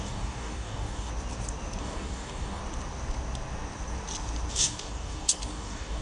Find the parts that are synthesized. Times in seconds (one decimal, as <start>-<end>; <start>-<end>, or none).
0.0-1.1; 1.8-2.6; 4.5-6.0